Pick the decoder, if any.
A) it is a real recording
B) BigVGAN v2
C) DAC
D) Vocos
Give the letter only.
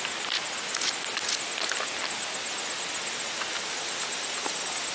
A